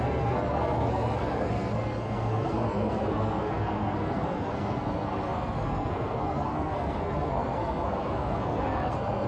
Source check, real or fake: fake